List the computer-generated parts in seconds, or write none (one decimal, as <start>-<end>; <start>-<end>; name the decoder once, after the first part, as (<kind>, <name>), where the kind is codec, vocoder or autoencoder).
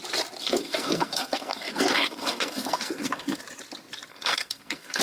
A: 0.4-3.4 (codec, SNAC); 4.1-5.0